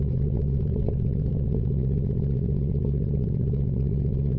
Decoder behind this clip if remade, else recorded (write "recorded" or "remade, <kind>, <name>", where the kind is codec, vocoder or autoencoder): remade, vocoder, WaveNeXt